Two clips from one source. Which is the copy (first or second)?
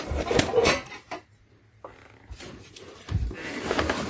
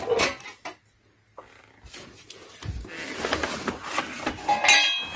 first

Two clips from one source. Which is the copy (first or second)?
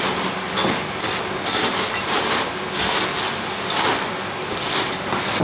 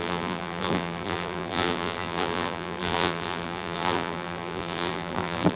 second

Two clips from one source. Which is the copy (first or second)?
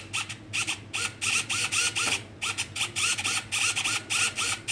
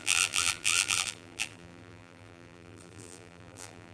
second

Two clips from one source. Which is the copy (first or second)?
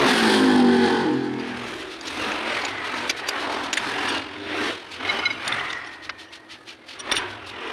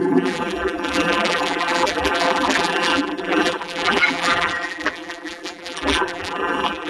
second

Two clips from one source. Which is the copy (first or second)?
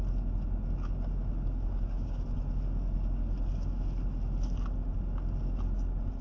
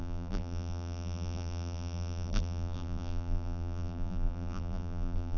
second